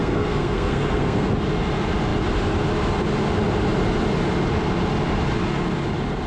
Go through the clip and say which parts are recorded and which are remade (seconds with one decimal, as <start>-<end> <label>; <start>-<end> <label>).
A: 0.0-1.3 remade; 1.3-6.3 recorded